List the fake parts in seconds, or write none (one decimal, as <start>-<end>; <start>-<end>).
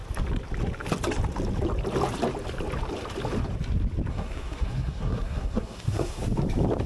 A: 4.1-6.2